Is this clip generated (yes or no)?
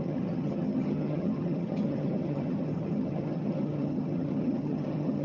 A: yes